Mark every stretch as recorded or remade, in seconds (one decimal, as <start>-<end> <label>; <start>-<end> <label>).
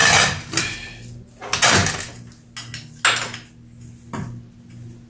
0.0-5.1 recorded